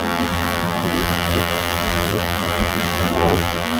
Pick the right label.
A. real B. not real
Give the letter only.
B